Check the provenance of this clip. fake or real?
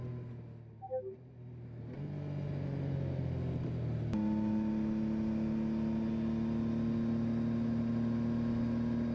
real